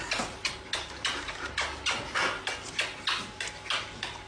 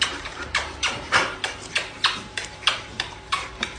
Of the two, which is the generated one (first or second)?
second